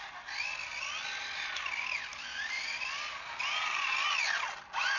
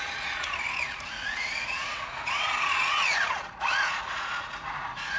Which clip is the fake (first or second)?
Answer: second